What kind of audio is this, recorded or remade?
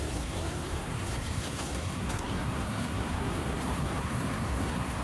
remade